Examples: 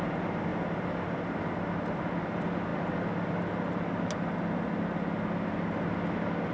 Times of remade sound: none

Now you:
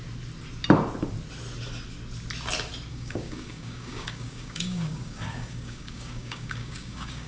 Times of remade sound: 2.9-7.3 (codec, DAC)

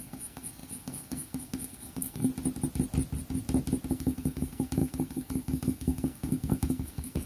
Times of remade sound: 0.0-2.3 (codec, SNAC); 3.9-7.3

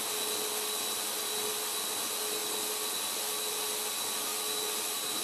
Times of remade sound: none

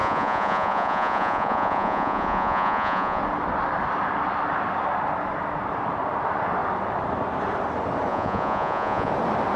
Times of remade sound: 0.0-3.2 (vocoder, Vocos); 8.1-9.1